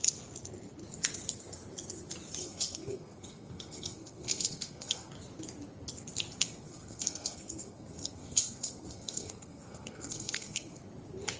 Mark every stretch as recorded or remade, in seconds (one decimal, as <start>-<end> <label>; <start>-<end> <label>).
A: 0.0-2.4 recorded; 2.4-5.1 remade; 5.1-6.4 recorded; 6.4-10.8 remade; 10.8-11.4 recorded

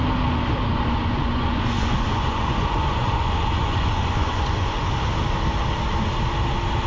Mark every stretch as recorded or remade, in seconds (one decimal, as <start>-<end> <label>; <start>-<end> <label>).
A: 0.0-0.7 recorded; 0.7-4.8 remade; 4.8-6.9 recorded

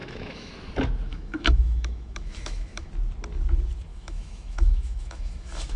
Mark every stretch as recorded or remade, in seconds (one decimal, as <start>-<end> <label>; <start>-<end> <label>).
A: 0.0-0.5 remade; 0.5-1.1 recorded; 1.1-2.9 remade; 2.9-3.9 recorded; 3.9-5.8 remade